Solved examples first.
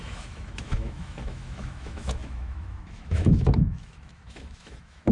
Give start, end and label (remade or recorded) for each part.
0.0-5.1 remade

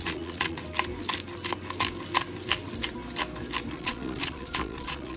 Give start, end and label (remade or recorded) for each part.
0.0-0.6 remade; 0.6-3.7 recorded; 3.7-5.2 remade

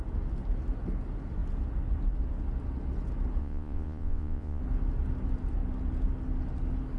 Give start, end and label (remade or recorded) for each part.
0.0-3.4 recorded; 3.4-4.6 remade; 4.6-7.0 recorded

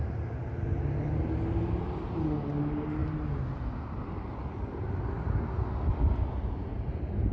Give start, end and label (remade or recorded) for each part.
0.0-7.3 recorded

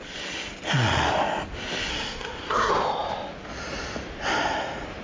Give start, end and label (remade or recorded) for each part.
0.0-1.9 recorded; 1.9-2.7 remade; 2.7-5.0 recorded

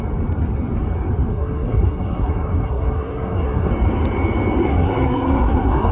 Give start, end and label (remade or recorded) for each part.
0.0-1.3 recorded; 1.3-3.7 remade; 3.7-4.6 recorded; 4.6-5.9 remade